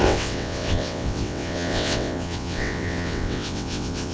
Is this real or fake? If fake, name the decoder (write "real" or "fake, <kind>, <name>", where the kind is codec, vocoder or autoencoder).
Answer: fake, vocoder, WaveNeXt